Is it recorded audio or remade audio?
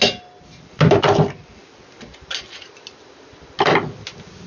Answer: recorded